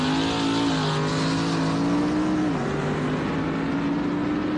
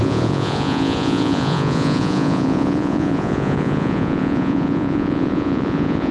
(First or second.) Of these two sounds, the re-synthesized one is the second